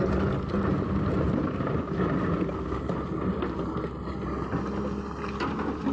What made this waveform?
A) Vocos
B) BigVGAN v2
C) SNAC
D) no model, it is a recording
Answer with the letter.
D